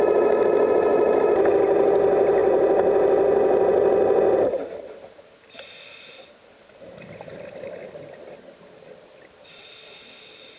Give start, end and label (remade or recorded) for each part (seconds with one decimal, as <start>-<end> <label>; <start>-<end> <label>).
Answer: 0.0-10.6 recorded